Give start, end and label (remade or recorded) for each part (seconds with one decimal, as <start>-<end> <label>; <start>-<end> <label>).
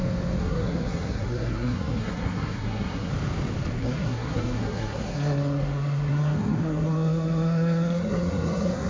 0.0-0.4 recorded; 0.4-3.1 remade; 3.1-3.8 recorded; 3.8-8.9 remade